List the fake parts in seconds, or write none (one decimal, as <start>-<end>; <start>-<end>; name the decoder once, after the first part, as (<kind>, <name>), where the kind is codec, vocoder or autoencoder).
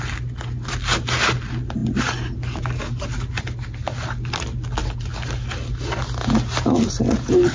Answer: none